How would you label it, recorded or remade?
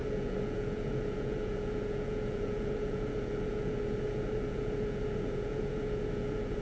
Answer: remade